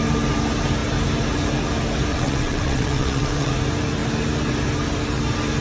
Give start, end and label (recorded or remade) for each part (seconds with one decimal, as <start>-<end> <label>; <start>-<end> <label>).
0.0-2.1 recorded; 2.1-3.5 remade; 3.5-5.6 recorded